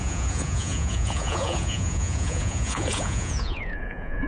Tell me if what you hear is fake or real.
fake